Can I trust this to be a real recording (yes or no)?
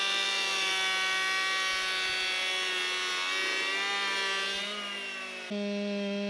yes